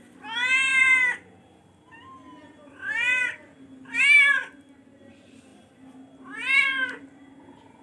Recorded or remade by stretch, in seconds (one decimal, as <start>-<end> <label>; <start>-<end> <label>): 0.0-7.8 recorded